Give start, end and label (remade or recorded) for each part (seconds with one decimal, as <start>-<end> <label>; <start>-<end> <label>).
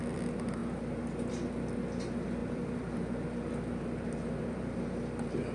0.0-2.4 recorded; 2.4-4.6 remade; 4.6-5.5 recorded